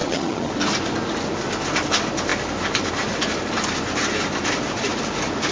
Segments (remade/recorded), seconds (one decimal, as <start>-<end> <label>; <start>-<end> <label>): 0.0-0.5 remade; 0.5-5.5 recorded